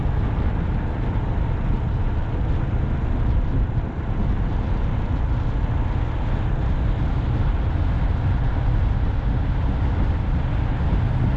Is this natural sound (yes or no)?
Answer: yes